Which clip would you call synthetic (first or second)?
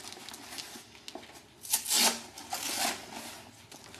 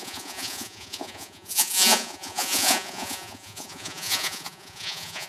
second